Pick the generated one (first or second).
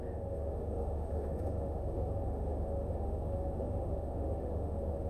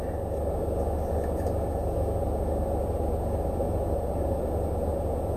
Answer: first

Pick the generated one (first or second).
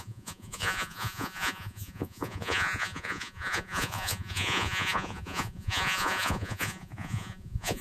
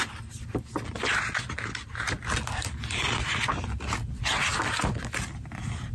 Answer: first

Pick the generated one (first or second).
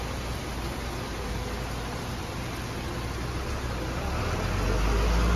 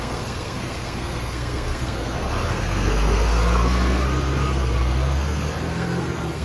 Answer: second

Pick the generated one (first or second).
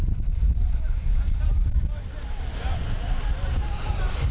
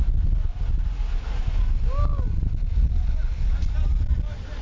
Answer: first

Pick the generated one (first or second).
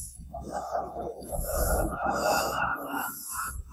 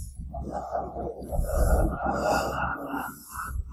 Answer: first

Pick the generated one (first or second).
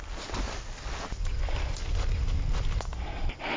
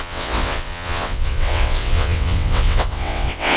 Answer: second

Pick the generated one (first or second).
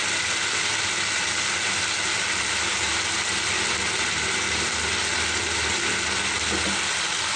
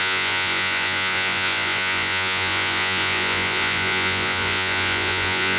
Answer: second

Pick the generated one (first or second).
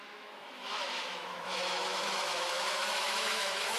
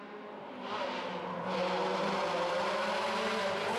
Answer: first